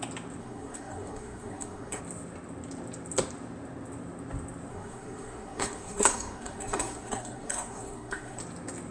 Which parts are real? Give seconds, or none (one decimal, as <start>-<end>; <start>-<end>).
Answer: 0.0-0.4; 2.0-4.7; 8.4-8.9